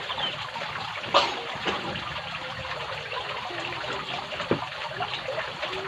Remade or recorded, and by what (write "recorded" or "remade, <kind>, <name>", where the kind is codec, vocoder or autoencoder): recorded